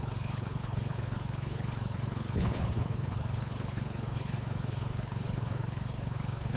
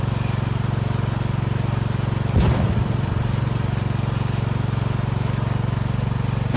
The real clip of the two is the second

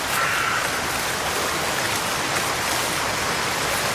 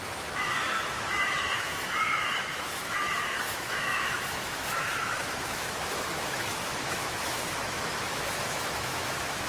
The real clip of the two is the first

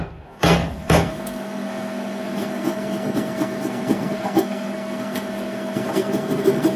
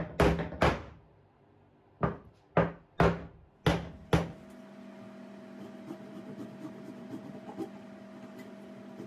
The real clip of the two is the second